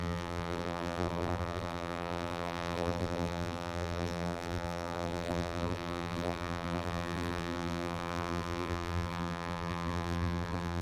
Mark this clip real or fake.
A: fake